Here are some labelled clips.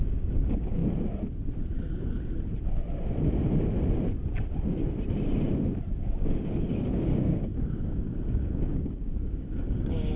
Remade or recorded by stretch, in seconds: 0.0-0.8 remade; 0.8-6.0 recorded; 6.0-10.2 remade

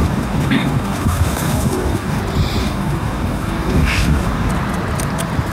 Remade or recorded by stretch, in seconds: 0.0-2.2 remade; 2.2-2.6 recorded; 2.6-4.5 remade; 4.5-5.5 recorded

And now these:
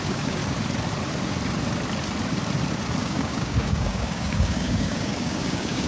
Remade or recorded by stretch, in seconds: 0.0-0.4 remade; 0.4-3.0 recorded; 3.0-5.9 remade